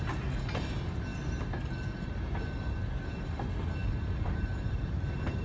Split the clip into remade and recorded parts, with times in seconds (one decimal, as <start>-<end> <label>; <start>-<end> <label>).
0.0-5.4 recorded